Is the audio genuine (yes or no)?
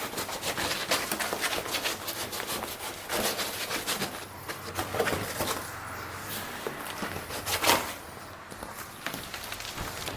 yes